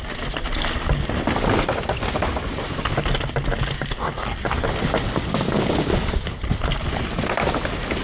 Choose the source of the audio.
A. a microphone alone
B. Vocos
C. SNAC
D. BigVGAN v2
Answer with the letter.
A